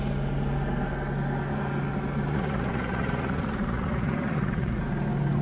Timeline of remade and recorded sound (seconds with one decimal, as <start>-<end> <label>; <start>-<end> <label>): 0.0-2.3 recorded; 2.3-4.8 remade; 4.8-5.4 recorded